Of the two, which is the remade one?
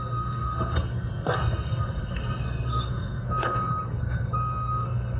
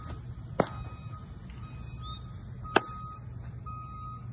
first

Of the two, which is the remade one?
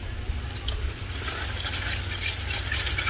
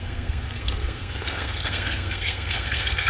second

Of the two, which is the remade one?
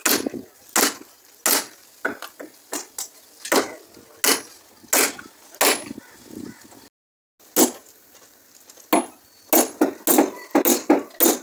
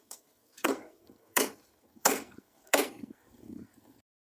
second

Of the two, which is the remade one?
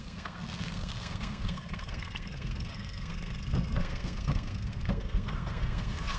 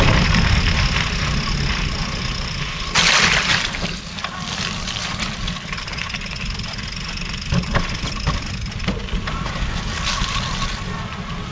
first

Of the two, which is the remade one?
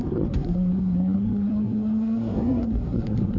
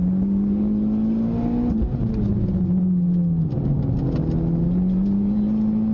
first